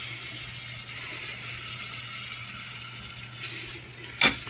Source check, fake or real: real